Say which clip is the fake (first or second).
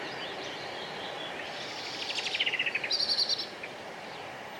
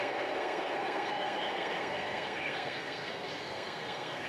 second